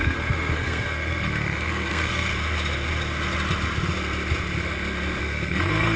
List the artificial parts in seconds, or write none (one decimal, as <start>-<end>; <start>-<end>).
0.0-2.3; 5.2-6.0